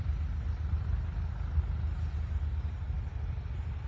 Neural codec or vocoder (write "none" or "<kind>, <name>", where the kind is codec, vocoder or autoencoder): none